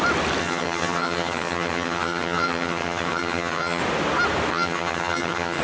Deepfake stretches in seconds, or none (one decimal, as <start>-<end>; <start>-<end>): 0.4-3.8; 4.5-5.6